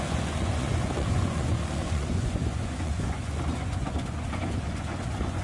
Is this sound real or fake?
fake